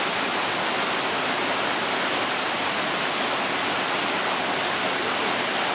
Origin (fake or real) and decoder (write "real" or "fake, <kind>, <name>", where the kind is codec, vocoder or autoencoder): real